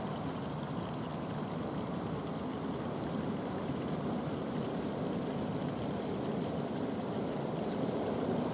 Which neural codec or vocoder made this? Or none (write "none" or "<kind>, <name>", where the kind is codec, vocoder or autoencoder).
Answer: none